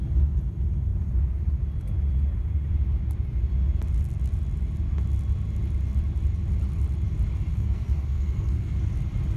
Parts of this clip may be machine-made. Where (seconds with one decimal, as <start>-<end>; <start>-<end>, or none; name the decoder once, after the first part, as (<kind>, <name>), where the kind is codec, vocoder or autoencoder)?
7.5-8.8 (codec, SNAC)